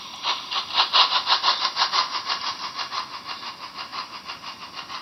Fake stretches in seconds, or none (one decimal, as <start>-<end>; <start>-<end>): none

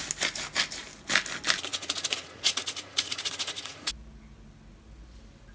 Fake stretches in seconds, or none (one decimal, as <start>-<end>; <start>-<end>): 1.7-3.9